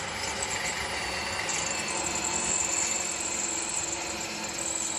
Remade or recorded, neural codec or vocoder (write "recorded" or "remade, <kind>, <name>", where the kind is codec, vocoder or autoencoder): recorded